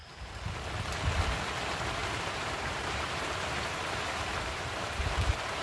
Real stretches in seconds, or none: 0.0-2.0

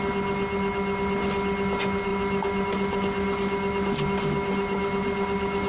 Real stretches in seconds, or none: 0.0-2.1